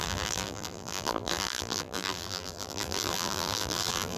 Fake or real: fake